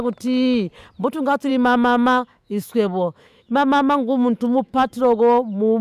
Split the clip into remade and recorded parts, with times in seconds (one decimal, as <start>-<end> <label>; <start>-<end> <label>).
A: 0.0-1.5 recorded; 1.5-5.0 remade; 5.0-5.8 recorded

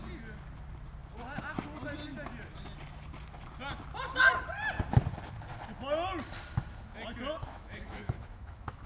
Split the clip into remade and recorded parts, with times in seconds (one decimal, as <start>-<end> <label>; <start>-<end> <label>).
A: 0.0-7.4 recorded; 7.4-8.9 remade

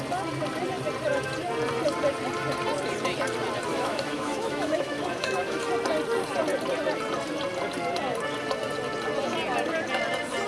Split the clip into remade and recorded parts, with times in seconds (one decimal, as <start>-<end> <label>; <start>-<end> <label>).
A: 0.0-3.7 recorded; 3.7-5.7 remade; 5.7-10.5 recorded

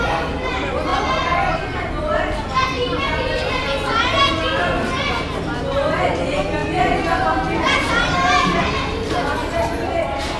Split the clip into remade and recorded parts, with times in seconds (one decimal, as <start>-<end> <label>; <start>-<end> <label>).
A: 0.0-10.4 recorded

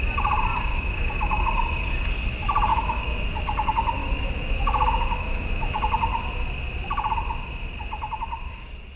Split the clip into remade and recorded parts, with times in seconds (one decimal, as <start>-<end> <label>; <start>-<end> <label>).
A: 0.0-0.7 recorded; 0.7-1.4 remade; 1.4-2.7 recorded; 2.7-3.2 remade; 3.2-4.0 recorded; 4.0-5.8 remade; 5.8-9.0 recorded